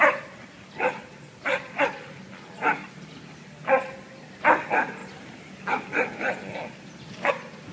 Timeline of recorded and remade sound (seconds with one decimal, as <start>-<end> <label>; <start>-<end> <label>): 0.0-7.7 recorded